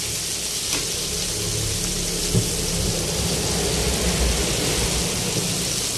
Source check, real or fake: real